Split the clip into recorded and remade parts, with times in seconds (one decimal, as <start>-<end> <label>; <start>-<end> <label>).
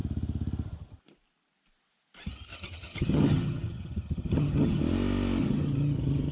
0.0-2.5 recorded; 2.5-4.8 remade; 4.8-5.4 recorded; 5.4-6.3 remade